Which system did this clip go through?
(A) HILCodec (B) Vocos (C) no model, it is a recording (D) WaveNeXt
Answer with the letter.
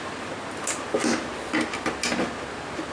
C